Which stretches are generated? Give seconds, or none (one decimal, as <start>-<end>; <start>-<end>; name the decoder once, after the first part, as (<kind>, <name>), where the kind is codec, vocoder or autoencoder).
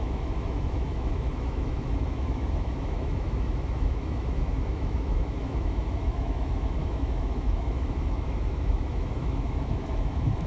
0.0-10.5 (autoencoder, DAC-VAE)